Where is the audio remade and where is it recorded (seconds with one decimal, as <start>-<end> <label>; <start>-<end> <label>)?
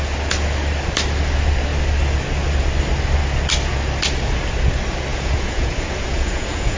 0.0-5.1 recorded; 5.1-6.8 remade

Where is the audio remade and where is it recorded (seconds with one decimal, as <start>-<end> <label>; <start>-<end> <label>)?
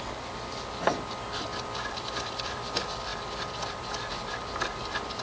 0.0-5.2 recorded